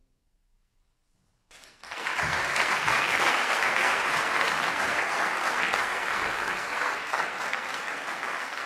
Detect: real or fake fake